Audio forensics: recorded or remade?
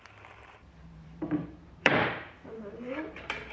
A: remade